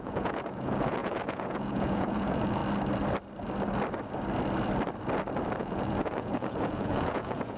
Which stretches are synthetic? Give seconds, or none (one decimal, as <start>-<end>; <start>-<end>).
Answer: 0.0-2.6; 5.6-7.6